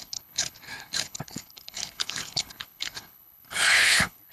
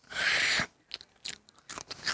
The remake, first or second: first